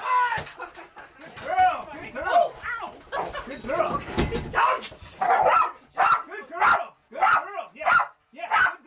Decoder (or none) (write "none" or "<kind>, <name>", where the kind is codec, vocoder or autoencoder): none